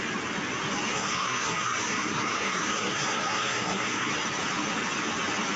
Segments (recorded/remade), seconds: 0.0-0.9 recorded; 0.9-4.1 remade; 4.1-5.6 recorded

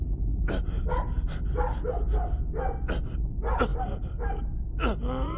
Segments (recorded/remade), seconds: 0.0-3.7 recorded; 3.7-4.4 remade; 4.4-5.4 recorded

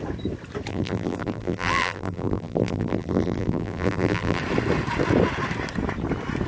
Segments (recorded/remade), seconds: 0.0-0.7 recorded; 0.7-4.4 remade; 4.4-6.5 recorded